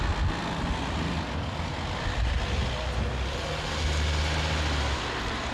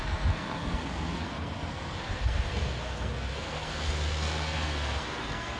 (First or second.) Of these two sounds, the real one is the first